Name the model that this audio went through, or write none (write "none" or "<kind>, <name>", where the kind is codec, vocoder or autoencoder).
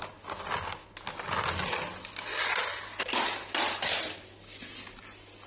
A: none